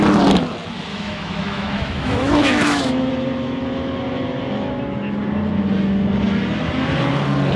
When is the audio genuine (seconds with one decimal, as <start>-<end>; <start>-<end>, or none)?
0.0-0.9; 3.1-7.6